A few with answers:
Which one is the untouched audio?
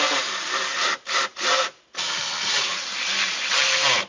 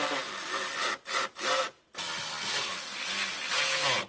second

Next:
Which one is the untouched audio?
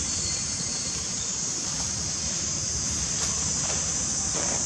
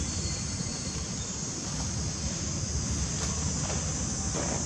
second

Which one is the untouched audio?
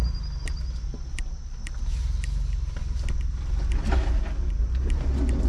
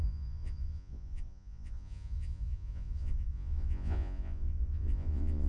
first